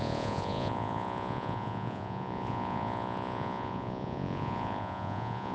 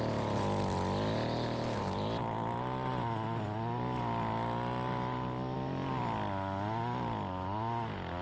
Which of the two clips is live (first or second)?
second